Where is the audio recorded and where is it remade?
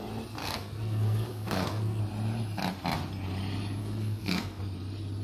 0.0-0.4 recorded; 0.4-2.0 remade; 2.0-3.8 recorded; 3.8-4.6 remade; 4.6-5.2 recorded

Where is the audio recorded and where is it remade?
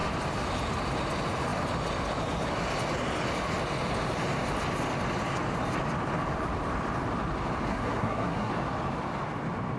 0.0-7.7 recorded; 7.7-8.5 remade; 8.5-9.8 recorded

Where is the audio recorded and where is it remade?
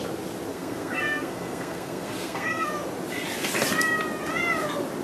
0.0-0.5 recorded; 0.5-2.7 remade; 2.7-5.0 recorded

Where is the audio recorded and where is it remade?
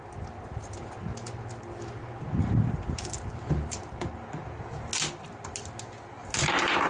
0.0-2.0 recorded; 2.0-3.9 remade; 3.9-6.2 recorded; 6.2-6.9 remade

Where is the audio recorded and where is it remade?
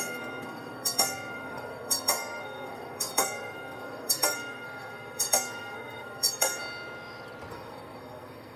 0.0-6.6 remade; 6.6-7.5 recorded; 7.5-8.6 remade